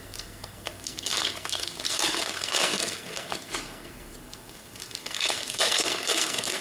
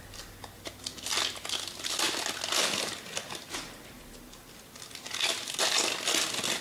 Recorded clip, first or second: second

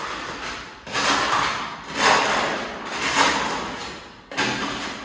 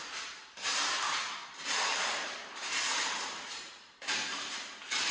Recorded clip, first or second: first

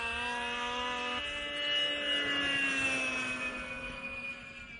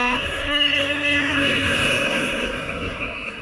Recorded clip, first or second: first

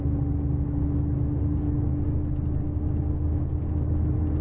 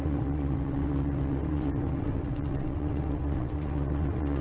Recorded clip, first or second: first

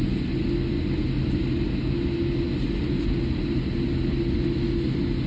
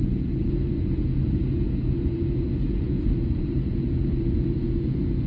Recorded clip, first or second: first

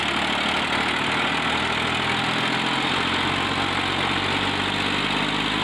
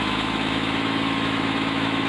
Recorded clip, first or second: first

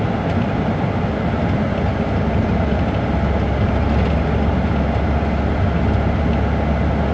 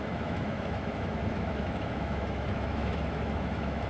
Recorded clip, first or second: first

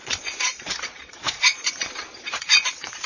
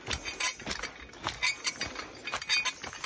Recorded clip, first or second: second